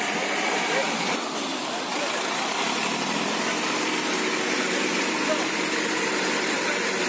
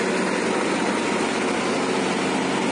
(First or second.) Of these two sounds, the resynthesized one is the first